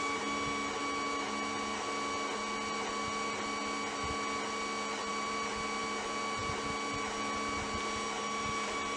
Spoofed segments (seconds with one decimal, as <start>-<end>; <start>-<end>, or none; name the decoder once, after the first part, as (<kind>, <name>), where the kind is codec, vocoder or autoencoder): none